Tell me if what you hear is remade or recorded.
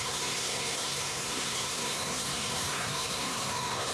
remade